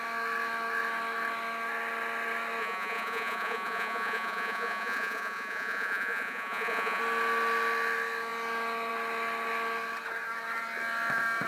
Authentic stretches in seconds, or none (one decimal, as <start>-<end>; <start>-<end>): 0.0-2.6; 7.0-11.5